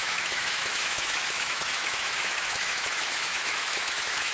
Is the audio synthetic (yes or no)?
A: yes